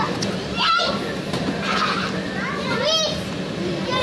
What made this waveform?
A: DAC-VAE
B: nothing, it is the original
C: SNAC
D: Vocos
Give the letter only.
B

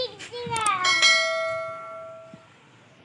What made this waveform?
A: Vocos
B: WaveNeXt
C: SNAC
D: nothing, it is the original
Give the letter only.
D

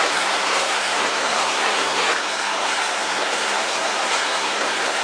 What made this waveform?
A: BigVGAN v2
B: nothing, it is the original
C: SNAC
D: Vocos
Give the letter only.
C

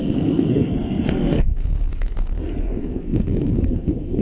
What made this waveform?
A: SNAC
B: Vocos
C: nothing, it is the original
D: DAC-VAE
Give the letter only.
A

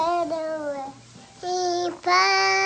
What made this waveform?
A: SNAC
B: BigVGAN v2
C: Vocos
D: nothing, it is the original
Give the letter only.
D